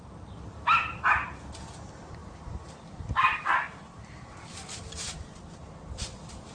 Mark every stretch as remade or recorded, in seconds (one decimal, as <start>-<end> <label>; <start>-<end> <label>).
0.0-2.2 recorded; 2.2-4.8 remade; 4.8-6.5 recorded